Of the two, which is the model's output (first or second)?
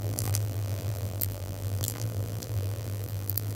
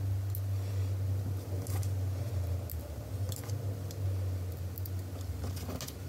first